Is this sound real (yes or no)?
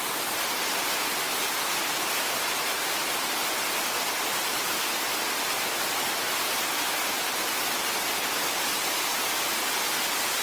yes